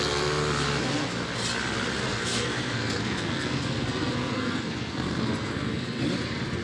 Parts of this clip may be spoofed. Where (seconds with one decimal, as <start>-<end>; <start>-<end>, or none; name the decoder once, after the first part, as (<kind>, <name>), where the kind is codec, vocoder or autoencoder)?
2.0-6.0 (codec, SNAC)